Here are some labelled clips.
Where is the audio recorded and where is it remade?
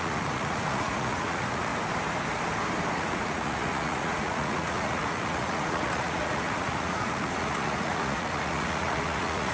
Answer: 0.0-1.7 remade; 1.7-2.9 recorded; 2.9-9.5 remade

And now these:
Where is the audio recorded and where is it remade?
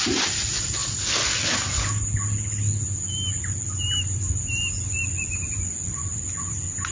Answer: 0.0-6.9 recorded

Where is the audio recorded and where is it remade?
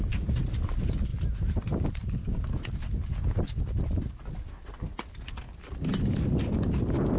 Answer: 0.0-7.2 recorded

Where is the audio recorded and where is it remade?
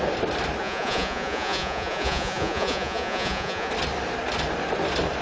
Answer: 0.0-0.6 recorded; 0.6-3.7 remade; 3.7-5.2 recorded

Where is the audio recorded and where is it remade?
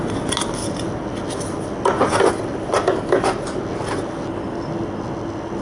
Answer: 0.0-5.6 recorded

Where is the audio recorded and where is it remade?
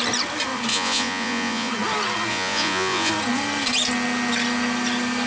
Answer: 0.0-0.7 recorded; 0.7-1.7 remade; 1.7-2.3 recorded; 2.3-3.1 remade; 3.1-5.3 recorded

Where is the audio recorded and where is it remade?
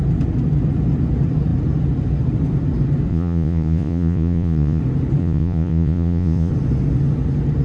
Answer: 0.0-3.1 recorded; 3.1-4.8 remade; 4.8-5.2 recorded; 5.2-6.5 remade; 6.5-7.6 recorded